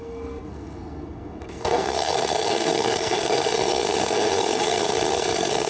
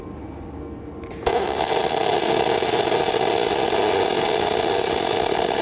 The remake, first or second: first